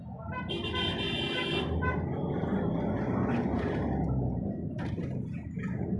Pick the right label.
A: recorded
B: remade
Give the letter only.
A